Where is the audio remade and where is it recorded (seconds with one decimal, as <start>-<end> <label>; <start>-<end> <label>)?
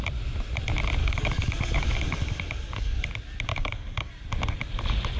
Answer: 0.0-1.0 recorded; 1.0-3.1 remade; 3.1-3.5 recorded; 3.5-4.1 remade; 4.1-5.2 recorded